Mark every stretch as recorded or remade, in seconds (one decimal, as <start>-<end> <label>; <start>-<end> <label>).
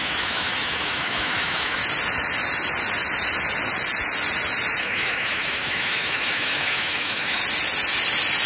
0.0-1.8 remade; 1.8-4.8 recorded; 4.8-7.4 remade; 7.4-8.5 recorded